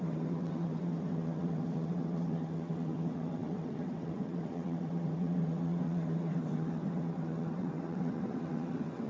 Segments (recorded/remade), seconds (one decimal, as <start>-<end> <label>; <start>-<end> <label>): 0.0-9.1 remade